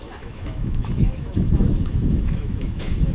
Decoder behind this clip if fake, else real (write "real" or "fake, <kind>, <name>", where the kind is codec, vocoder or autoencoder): fake, autoencoder, DAC-VAE